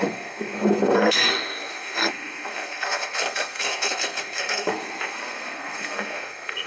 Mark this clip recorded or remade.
remade